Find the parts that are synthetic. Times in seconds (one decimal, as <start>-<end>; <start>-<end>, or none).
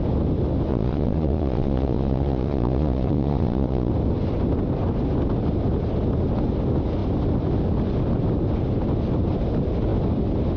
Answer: 0.7-3.9